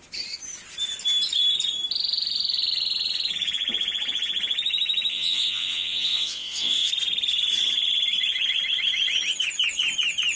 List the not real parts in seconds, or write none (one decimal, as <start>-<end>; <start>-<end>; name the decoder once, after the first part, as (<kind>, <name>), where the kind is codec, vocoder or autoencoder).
5.1-6.9 (vocoder, WaveNeXt)